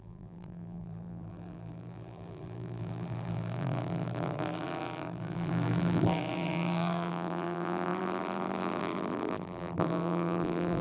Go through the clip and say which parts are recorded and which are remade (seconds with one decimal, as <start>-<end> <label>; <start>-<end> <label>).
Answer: 0.0-10.8 remade